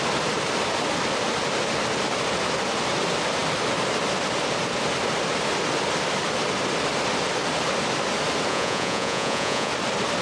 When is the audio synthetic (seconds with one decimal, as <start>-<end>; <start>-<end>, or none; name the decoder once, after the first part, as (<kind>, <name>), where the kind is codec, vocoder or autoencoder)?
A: 8.5-9.7 (vocoder, Vocos)